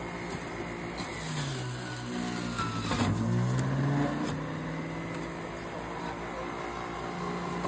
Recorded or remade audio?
recorded